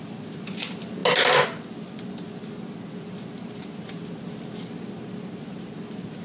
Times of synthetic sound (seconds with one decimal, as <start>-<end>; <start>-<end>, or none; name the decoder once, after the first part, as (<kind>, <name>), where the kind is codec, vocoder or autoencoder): none